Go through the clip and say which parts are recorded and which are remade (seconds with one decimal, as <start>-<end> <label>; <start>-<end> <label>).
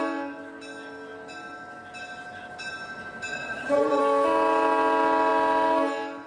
0.0-3.3 recorded; 3.3-4.0 remade; 4.0-6.3 recorded